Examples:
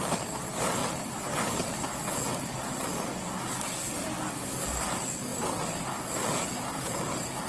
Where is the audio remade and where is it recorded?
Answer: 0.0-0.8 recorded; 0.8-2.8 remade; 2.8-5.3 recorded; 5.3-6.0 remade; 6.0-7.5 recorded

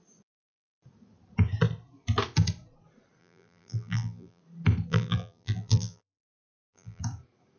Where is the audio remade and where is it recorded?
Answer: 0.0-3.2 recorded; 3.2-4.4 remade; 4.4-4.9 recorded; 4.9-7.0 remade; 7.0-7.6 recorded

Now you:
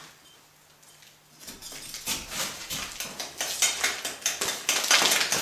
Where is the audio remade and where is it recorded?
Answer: 0.0-5.4 recorded

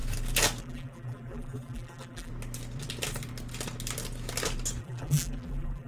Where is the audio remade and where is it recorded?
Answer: 0.0-0.6 recorded; 0.6-2.3 remade; 2.3-4.8 recorded; 4.8-5.9 remade